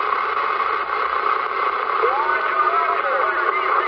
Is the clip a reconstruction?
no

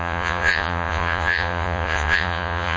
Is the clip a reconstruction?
yes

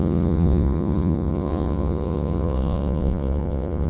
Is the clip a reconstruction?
yes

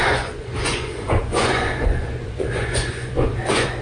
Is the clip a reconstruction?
yes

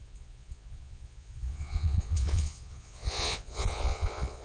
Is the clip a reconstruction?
yes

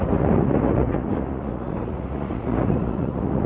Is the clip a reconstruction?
yes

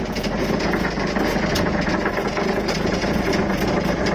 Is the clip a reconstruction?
yes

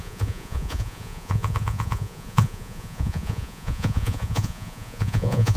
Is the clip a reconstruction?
yes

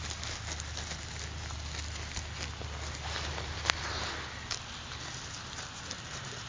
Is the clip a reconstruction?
no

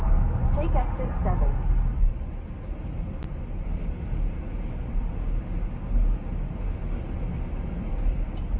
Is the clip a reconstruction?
no